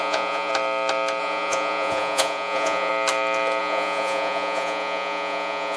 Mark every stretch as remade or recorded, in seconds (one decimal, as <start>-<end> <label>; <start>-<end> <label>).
0.0-0.5 remade; 0.5-1.2 recorded; 1.2-2.9 remade; 2.9-3.6 recorded; 3.6-5.8 remade